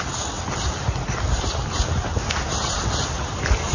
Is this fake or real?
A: real